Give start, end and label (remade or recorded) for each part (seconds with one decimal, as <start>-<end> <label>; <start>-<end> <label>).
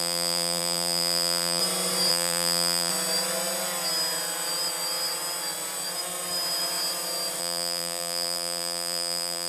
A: 0.0-1.6 remade; 1.6-2.1 recorded; 2.1-2.9 remade; 2.9-7.4 recorded; 7.4-9.5 remade